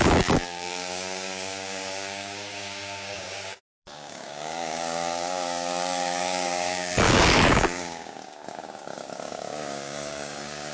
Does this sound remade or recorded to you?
remade